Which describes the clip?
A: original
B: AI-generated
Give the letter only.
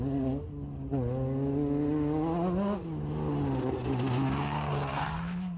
A